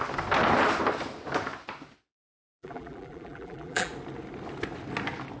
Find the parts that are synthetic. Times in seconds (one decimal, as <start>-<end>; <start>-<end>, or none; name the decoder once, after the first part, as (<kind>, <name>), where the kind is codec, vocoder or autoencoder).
2.5-3.9 (vocoder, BigVGAN v2)